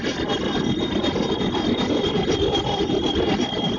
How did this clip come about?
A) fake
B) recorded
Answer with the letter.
B